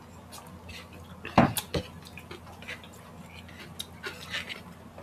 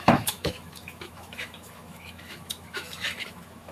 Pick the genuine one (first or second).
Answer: first